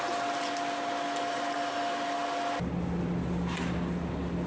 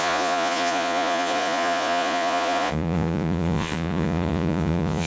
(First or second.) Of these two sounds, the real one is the first